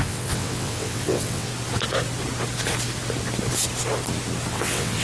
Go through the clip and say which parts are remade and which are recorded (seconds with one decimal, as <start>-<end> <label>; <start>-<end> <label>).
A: 0.0-1.5 remade; 1.5-4.5 recorded; 4.5-5.0 remade